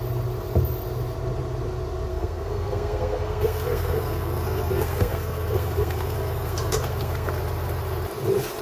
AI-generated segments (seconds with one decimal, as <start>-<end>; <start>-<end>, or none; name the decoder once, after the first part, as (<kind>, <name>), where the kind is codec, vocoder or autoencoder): 2.1-7.3 (codec, SNAC)